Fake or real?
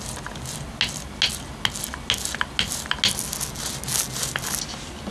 real